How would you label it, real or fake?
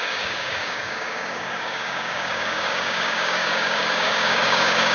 fake